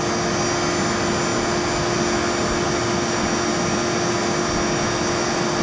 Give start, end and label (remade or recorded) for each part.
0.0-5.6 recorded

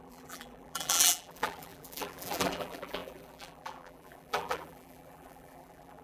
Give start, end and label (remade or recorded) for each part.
0.0-6.0 remade

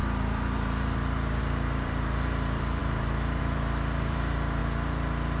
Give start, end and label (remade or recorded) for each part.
0.0-4.6 remade; 4.6-5.4 recorded

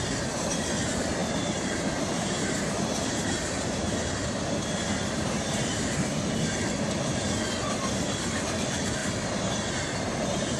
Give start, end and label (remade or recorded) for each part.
0.0-1.2 recorded; 1.2-6.2 remade; 6.2-10.6 recorded